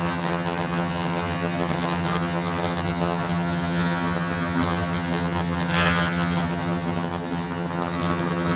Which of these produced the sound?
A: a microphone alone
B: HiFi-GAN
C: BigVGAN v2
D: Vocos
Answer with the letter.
B